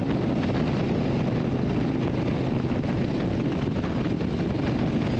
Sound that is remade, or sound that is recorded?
recorded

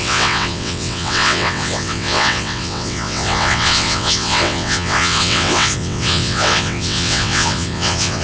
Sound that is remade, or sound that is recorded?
remade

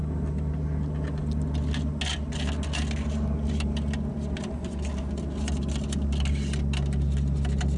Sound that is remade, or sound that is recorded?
recorded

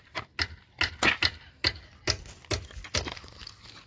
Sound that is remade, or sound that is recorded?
recorded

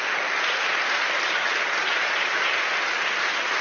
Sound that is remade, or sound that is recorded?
recorded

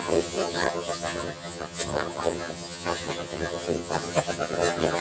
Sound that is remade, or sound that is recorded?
remade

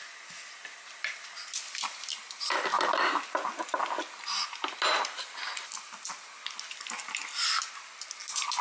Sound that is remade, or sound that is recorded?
recorded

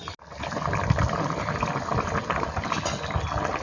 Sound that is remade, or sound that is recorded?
recorded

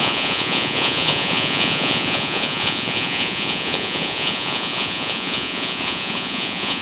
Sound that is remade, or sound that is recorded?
remade